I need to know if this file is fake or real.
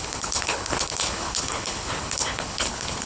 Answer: fake